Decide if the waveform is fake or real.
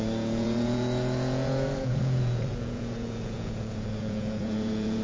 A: fake